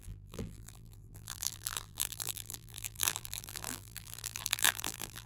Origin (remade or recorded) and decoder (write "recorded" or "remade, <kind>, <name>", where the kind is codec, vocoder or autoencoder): remade, vocoder, BigVGAN v2